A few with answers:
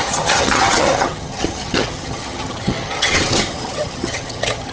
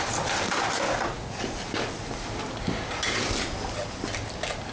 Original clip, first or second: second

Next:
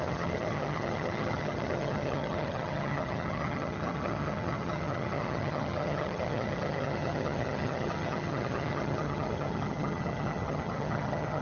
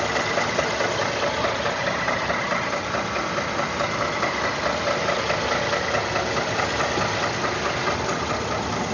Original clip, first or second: second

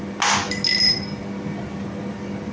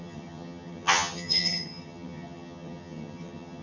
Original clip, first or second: first